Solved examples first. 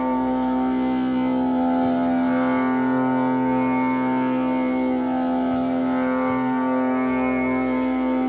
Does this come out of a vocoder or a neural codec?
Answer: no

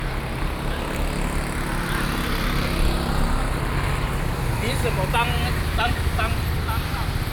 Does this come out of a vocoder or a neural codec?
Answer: no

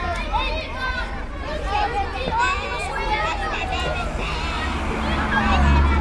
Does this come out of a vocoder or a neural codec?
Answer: no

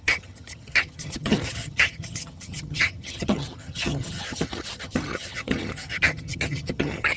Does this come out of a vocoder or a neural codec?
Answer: yes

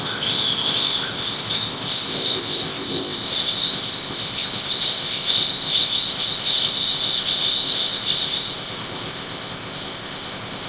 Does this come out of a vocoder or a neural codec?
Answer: yes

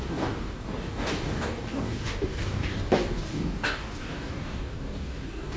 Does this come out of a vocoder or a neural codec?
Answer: yes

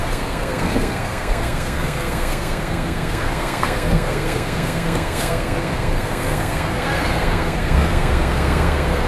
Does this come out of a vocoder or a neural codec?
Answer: yes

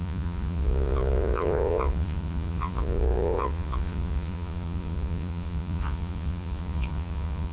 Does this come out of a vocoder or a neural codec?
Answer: yes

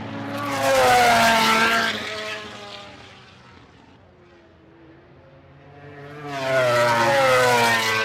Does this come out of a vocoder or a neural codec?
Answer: no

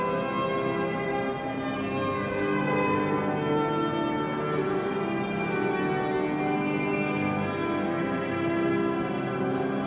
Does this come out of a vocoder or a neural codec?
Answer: no